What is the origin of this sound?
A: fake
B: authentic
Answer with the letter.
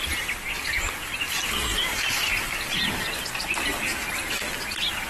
B